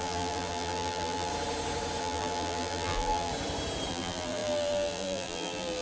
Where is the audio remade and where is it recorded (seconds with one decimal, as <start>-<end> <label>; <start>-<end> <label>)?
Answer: 0.0-1.3 remade; 1.3-2.0 recorded; 2.0-3.3 remade; 3.3-3.9 recorded; 3.9-5.8 remade

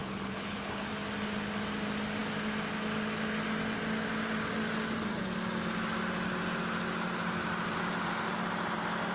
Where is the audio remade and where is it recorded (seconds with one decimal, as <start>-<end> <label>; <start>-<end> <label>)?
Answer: 0.0-0.9 remade; 0.9-9.1 recorded

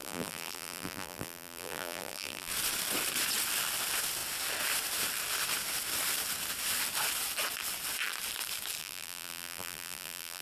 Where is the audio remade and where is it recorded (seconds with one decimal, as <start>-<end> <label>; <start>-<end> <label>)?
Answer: 0.0-2.5 remade; 2.5-8.8 recorded; 8.8-10.4 remade

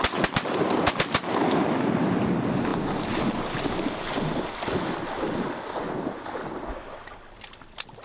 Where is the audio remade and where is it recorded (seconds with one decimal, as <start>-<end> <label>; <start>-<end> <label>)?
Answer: 0.0-8.0 recorded

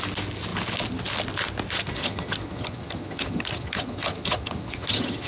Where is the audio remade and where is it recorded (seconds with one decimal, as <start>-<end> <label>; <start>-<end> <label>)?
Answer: 0.0-2.0 recorded; 2.0-5.3 remade